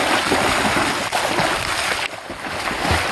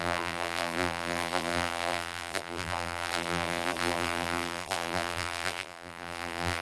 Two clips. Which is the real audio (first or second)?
first